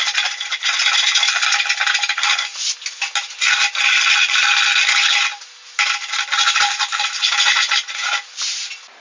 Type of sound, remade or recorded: recorded